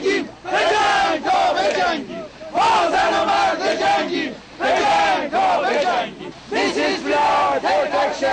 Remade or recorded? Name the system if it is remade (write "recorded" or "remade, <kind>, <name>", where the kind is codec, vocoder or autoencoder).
recorded